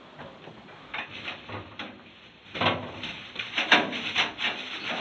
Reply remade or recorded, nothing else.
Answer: recorded